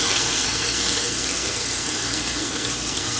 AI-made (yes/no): yes